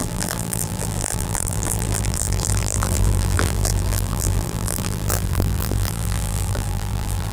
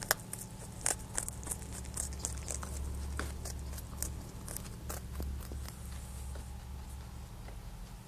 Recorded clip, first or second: second